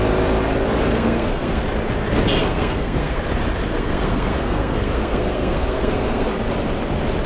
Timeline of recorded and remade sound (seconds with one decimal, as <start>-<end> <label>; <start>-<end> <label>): 0.0-0.9 recorded; 0.9-1.6 remade; 1.6-2.4 recorded; 2.4-3.2 remade; 3.2-3.7 recorded; 3.7-6.3 remade; 6.3-7.3 recorded